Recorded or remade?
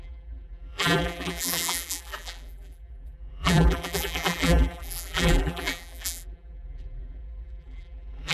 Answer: remade